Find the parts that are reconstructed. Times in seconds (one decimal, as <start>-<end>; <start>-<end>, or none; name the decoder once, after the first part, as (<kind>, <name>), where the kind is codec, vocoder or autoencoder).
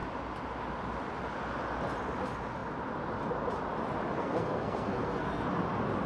4.2-5.5 (codec, SNAC)